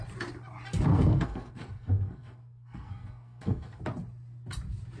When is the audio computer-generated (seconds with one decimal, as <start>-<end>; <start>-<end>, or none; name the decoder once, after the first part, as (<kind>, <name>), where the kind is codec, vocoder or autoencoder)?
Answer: 0.9-3.8 (codec, SNAC)